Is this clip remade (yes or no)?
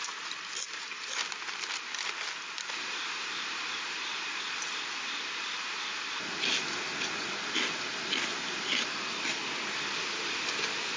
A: no